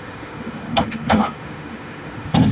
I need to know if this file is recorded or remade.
remade